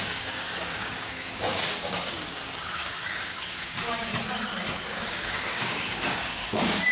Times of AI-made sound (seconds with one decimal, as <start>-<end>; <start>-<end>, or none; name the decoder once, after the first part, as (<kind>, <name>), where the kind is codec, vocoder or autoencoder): 0.0-4.1 (codec, DAC); 4.7-6.9

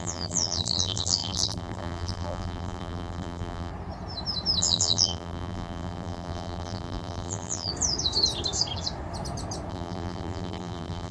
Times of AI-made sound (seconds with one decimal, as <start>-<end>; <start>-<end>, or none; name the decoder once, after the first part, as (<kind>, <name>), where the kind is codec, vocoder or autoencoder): 0.0-3.7 (vocoder, BigVGAN v2); 4.6-7.7; 9.7-11.1

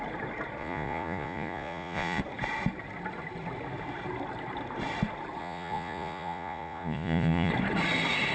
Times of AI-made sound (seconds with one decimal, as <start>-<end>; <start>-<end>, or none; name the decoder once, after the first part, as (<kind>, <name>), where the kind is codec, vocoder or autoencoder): 0.6-2.2 (vocoder, Vocos); 5.4-7.5